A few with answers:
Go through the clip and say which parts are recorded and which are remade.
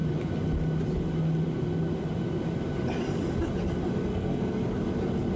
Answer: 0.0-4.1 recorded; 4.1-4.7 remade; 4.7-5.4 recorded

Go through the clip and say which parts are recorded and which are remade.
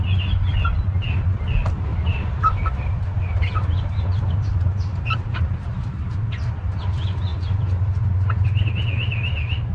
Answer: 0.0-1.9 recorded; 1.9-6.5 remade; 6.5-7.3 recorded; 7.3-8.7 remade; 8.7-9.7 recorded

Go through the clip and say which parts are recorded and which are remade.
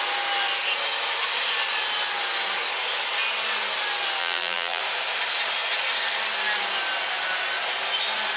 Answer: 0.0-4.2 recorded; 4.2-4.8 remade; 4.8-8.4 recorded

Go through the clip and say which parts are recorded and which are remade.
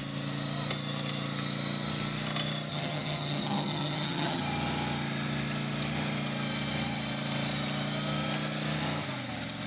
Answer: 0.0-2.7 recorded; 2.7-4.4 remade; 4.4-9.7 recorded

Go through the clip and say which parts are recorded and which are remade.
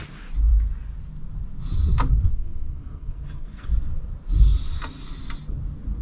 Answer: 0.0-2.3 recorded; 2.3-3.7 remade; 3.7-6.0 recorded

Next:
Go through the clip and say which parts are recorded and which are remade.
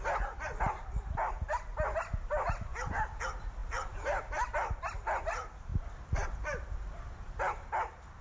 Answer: 0.0-8.2 recorded